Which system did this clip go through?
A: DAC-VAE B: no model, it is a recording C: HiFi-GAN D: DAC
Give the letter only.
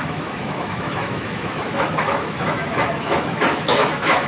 A